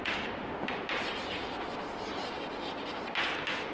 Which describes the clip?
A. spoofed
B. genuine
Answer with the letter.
B